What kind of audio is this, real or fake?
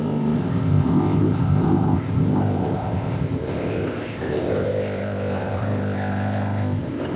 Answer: fake